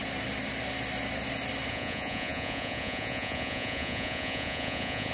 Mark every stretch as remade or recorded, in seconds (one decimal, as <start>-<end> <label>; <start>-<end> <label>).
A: 0.0-1.7 recorded; 1.7-5.1 remade